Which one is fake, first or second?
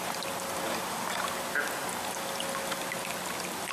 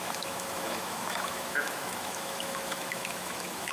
second